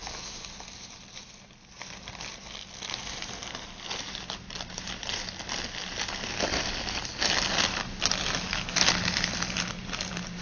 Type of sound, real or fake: real